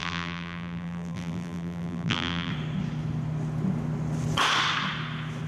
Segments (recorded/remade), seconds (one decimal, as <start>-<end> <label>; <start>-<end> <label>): 0.0-2.5 remade; 2.5-5.5 recorded